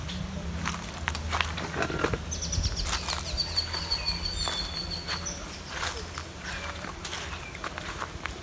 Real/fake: real